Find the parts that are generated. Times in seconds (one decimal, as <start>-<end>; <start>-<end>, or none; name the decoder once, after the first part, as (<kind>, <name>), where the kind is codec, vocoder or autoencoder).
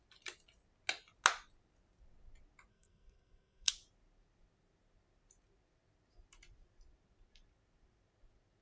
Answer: 2.7-3.7 (codec, SNAC)